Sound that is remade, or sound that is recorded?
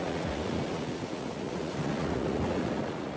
remade